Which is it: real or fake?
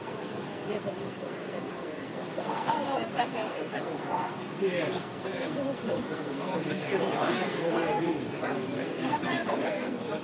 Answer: fake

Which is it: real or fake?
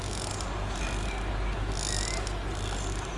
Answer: real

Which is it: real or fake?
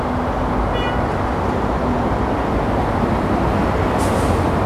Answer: real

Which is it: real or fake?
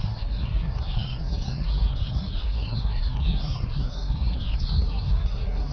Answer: fake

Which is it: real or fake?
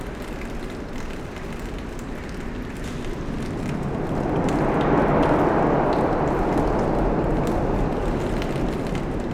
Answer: real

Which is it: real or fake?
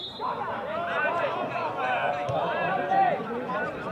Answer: real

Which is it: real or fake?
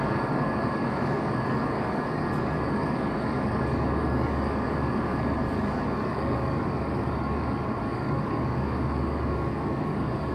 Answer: fake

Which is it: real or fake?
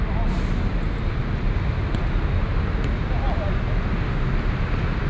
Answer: real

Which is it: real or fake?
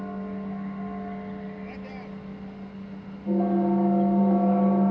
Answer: real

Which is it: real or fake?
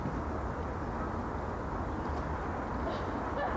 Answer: real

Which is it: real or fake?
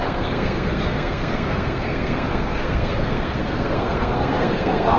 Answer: fake